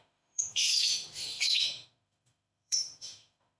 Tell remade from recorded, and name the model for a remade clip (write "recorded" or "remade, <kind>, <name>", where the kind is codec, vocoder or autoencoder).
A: remade, autoencoder, DAC-VAE